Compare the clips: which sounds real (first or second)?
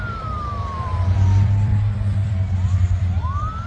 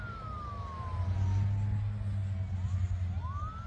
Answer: second